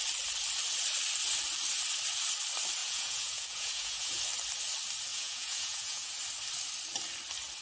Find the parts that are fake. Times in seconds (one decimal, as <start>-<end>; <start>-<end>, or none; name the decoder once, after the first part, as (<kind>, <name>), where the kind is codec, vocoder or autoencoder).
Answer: 2.8-4.2 (vocoder, Vocos); 5.1-6.1